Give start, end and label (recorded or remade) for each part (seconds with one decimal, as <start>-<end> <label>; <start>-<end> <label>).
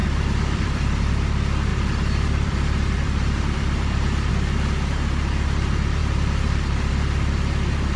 0.0-1.1 remade; 1.1-1.7 recorded; 1.7-4.3 remade; 4.3-6.0 recorded; 6.0-6.9 remade; 6.9-8.0 recorded